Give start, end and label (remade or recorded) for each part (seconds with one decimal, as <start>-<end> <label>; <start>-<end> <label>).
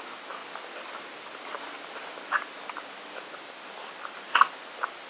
0.0-0.4 recorded; 0.4-2.0 remade; 2.0-5.1 recorded